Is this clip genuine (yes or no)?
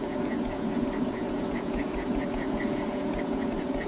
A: no